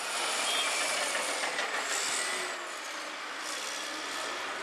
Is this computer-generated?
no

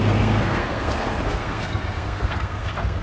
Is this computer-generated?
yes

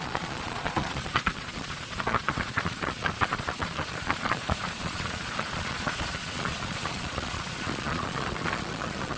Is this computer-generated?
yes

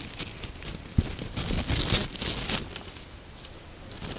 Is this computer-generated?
no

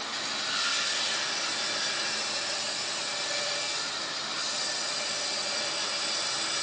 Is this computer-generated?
no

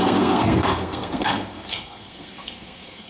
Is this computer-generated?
yes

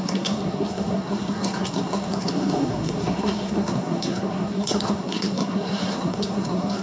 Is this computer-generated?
yes